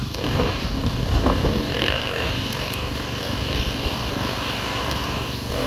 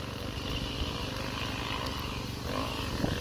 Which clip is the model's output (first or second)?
first